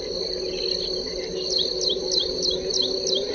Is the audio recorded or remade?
recorded